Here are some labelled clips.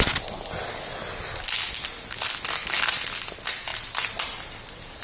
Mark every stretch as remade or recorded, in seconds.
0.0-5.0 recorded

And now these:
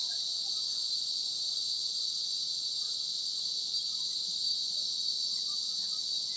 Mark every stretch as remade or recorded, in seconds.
0.0-1.8 recorded; 1.8-5.5 remade; 5.5-6.4 recorded

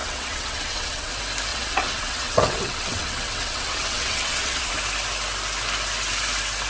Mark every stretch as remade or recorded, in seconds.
0.0-1.1 remade; 1.1-1.5 recorded; 1.5-4.7 remade; 4.7-6.7 recorded

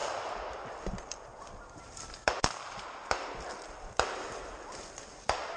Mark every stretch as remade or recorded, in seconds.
0.0-5.6 recorded

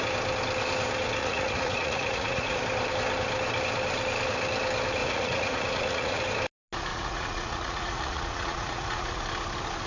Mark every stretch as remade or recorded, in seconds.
0.0-1.2 recorded; 1.2-2.6 remade; 2.6-5.0 recorded; 5.0-6.2 remade; 6.2-6.9 recorded; 6.9-9.2 remade; 9.2-9.9 recorded